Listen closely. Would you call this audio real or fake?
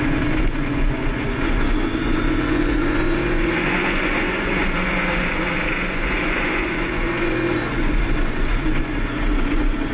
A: fake